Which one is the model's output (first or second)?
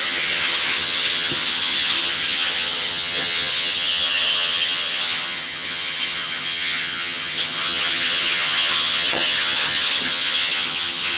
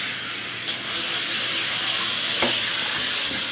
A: first